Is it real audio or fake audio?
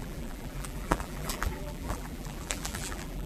fake